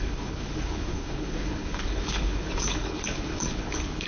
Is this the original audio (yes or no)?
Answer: no